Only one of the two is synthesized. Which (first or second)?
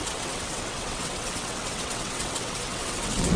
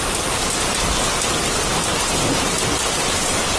first